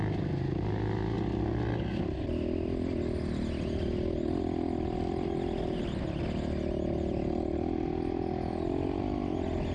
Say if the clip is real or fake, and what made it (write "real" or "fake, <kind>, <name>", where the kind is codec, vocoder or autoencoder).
real